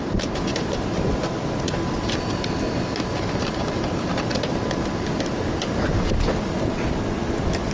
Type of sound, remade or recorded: recorded